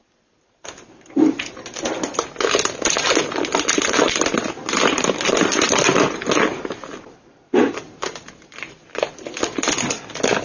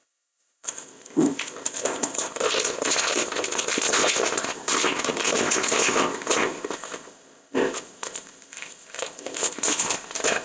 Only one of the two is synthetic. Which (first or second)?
second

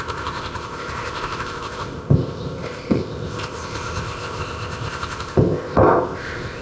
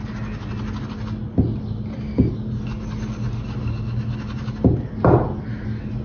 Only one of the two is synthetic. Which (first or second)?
first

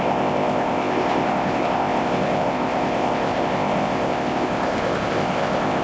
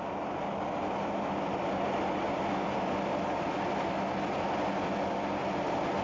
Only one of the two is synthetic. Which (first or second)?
first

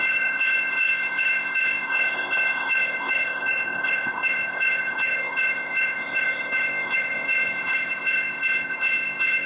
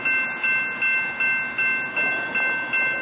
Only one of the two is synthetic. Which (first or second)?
first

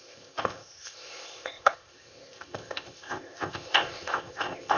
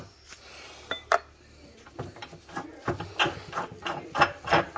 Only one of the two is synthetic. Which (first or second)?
first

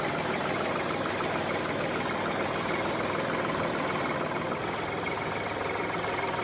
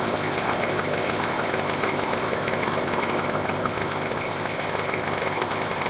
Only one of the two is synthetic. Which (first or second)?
second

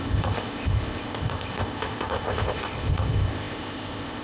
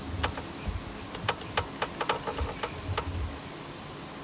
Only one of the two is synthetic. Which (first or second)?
first